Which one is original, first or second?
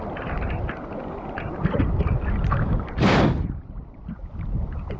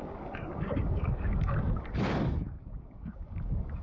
first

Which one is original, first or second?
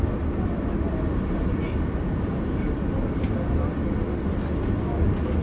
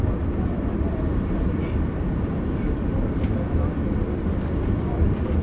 first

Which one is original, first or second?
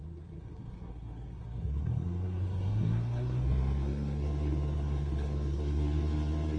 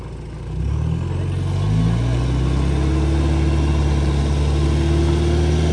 second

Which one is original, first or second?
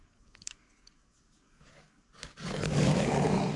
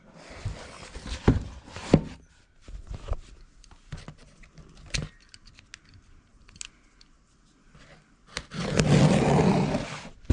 second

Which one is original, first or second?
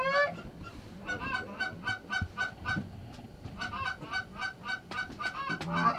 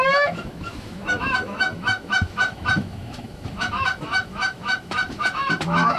first